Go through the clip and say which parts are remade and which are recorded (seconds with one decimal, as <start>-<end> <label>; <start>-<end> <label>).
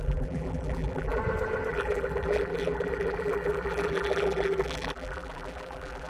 0.0-1.2 remade; 1.2-1.7 recorded; 1.7-6.1 remade